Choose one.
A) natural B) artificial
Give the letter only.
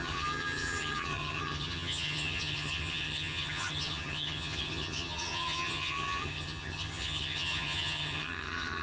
B